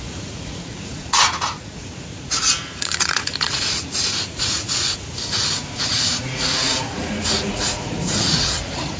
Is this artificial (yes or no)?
yes